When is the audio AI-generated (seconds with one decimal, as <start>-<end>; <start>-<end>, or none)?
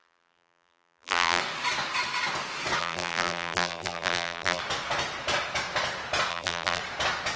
0.0-1.4; 2.8-4.6; 6.3-6.8